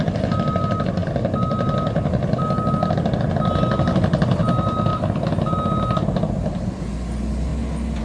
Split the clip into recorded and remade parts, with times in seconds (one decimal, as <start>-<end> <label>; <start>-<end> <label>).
0.0-8.0 recorded